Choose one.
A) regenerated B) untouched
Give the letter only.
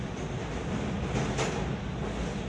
B